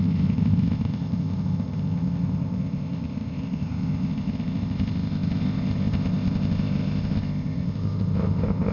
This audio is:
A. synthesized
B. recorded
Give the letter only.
A